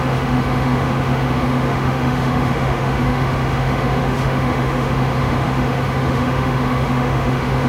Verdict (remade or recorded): remade